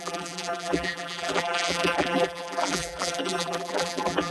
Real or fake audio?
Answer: fake